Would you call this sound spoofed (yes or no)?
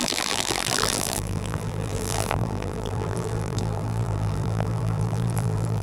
yes